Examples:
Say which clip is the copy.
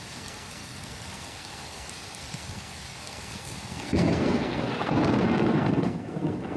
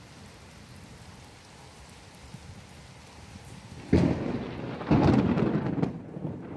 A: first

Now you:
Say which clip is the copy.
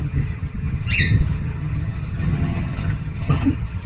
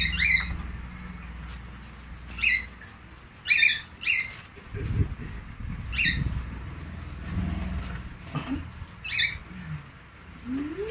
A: first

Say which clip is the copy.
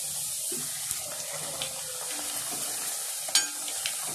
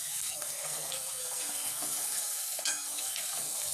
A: second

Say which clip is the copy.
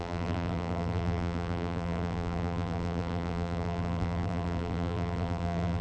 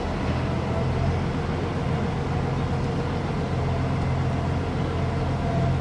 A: first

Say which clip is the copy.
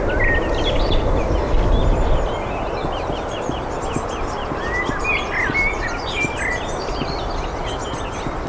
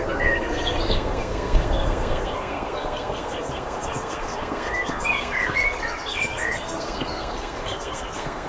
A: second